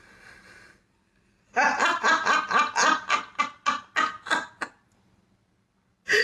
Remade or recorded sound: recorded